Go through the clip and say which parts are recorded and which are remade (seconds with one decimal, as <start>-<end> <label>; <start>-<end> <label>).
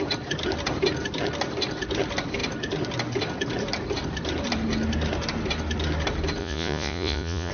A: 0.0-6.4 recorded; 6.4-7.5 remade